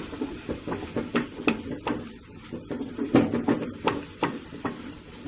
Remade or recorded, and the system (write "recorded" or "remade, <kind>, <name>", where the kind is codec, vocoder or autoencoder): recorded